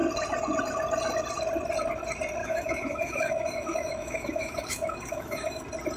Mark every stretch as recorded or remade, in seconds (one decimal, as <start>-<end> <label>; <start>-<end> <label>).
0.0-2.4 recorded; 2.4-5.6 remade; 5.6-6.0 recorded